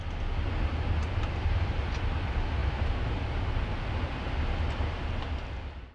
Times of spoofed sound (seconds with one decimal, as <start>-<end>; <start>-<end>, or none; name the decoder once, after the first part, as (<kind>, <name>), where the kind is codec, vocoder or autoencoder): 0.7-1.8 (vocoder, BigVGAN v2)

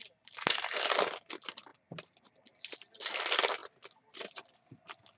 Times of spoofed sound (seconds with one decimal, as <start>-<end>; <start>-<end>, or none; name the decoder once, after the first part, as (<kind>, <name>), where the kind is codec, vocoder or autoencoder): 1.7-2.6 (vocoder, BigVGAN v2)